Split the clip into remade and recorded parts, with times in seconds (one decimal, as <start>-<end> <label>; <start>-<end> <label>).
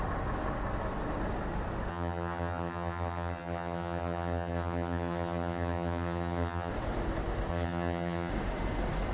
0.0-1.9 recorded; 1.9-6.7 remade; 6.7-7.5 recorded; 7.5-8.3 remade; 8.3-9.1 recorded